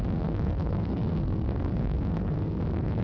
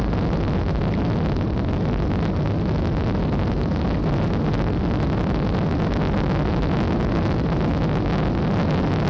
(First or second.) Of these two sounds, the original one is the second